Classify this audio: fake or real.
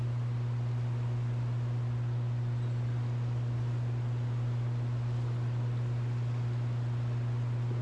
real